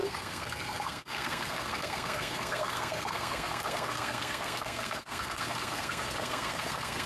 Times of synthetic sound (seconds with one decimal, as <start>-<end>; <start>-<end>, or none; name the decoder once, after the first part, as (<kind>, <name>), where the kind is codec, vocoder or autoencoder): 0.0-7.1 (codec, SNAC)